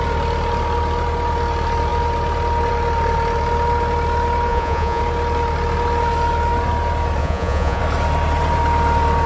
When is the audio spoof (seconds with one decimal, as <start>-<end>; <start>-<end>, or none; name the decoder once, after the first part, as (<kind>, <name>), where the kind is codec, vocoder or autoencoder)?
4.5-5.0 (vocoder, Vocos); 7.2-7.8